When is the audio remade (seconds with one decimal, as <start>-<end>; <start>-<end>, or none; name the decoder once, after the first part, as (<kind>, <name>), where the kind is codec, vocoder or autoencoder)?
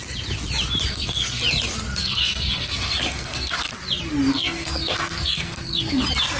0.9-1.4 (codec, SNAC); 2.0-3.7; 4.3-6.0